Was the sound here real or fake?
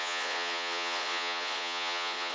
fake